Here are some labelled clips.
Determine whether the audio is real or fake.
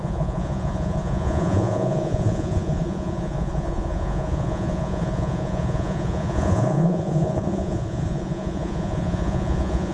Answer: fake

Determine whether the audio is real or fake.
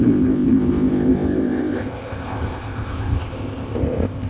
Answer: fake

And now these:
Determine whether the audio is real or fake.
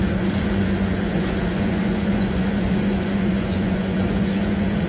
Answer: fake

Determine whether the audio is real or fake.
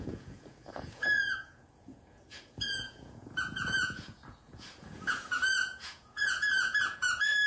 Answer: fake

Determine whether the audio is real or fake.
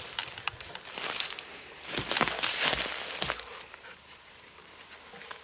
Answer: real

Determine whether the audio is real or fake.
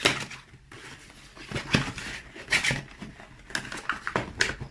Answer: real